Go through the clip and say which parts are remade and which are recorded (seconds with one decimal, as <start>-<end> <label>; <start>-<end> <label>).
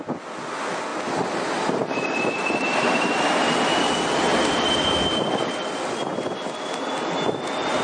0.0-0.9 recorded; 0.9-3.2 remade; 3.2-4.3 recorded; 4.3-4.9 remade; 4.9-7.8 recorded